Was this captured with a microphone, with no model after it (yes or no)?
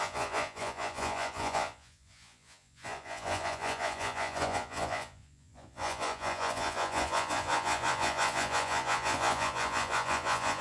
no